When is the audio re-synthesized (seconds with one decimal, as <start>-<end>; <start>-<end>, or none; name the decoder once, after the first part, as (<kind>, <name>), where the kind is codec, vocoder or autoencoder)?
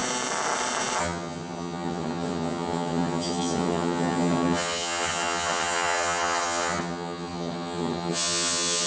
1.0-8.9 (vocoder, HiFi-GAN)